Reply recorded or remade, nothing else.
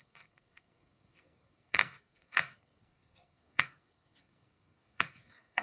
remade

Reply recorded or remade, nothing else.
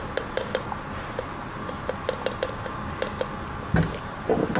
recorded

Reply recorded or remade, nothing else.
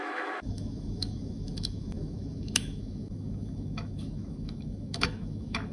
remade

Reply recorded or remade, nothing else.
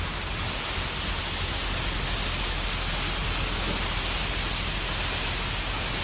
recorded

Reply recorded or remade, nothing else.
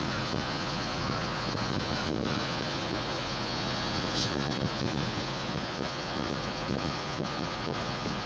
remade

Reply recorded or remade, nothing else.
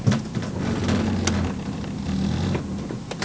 recorded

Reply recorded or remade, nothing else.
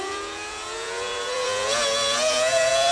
remade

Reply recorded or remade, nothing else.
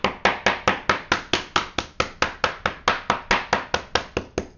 recorded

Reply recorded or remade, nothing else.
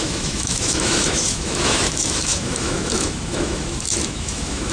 remade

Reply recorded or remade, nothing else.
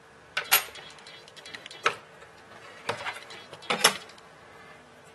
recorded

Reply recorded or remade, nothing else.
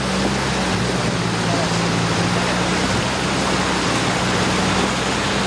recorded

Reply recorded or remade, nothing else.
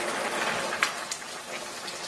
recorded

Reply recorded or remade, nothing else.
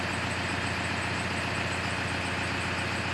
recorded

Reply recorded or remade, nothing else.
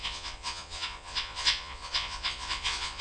remade